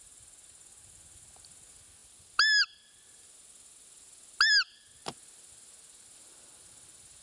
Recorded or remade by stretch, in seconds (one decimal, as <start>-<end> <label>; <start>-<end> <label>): 0.0-7.2 recorded